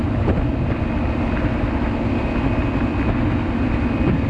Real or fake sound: real